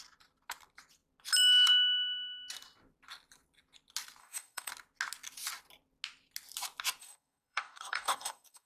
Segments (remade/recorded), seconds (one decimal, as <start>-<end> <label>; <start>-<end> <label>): 0.0-4.2 recorded; 4.2-4.7 remade; 4.7-7.0 recorded; 7.0-8.7 remade